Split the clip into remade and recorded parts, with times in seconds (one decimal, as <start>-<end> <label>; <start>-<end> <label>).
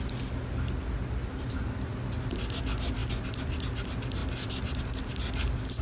0.0-5.8 recorded